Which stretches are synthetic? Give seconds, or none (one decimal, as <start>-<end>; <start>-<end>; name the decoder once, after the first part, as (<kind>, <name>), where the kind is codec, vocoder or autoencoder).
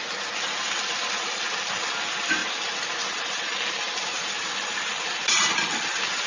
none